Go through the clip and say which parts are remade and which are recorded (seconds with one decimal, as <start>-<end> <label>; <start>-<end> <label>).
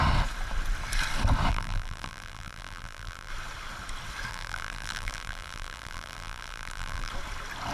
0.0-1.5 recorded; 1.5-3.3 remade; 3.3-4.3 recorded; 4.3-7.1 remade; 7.1-7.7 recorded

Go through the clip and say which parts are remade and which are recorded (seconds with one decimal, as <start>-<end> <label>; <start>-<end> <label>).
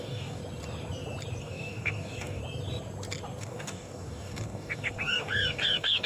0.0-0.4 remade; 0.4-1.4 recorded; 1.4-2.4 remade; 2.4-3.4 recorded; 3.4-6.1 remade